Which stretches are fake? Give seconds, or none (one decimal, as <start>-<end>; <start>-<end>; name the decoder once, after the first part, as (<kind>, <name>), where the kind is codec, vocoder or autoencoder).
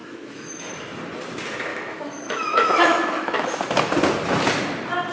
0.0-0.7 (autoencoder, DAC-VAE); 1.7-3.5